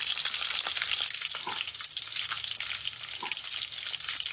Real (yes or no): yes